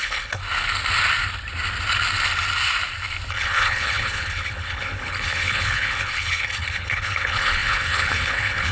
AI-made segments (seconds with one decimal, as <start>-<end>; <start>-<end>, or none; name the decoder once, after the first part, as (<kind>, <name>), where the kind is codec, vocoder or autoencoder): 0.0-0.4 (codec, HILCodec); 3.3-8.7